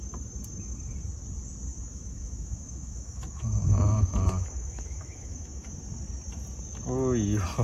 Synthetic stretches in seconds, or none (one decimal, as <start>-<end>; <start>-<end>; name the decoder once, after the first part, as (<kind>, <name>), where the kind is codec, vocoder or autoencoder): 1.7-5.7 (autoencoder, DAC-VAE)